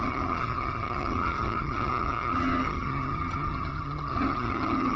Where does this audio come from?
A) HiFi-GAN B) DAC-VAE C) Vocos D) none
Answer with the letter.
A